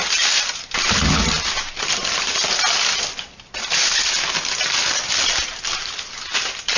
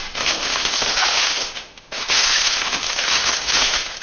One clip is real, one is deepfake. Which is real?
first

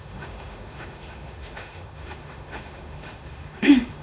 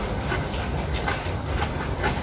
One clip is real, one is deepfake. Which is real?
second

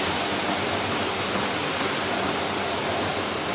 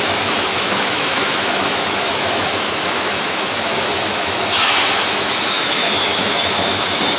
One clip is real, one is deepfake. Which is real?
first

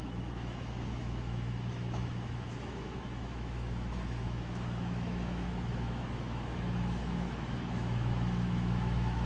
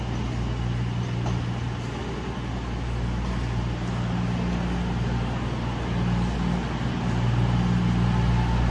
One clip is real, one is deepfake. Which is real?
second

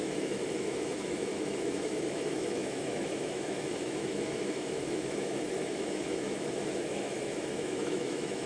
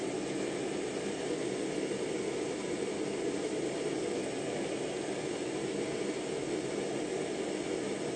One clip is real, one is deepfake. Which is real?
second